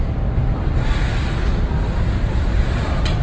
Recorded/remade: recorded